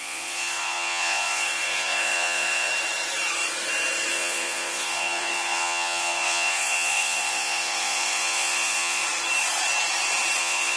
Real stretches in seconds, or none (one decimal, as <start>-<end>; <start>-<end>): 2.7-4.1; 9.0-10.4